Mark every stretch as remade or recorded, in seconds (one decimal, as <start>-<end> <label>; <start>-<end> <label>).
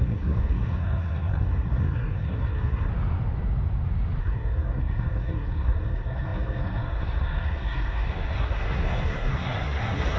0.0-2.9 remade; 2.9-4.2 recorded; 4.2-10.2 remade